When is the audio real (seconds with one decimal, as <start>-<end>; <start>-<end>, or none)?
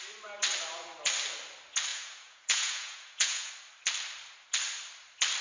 0.0-1.9; 3.5-5.4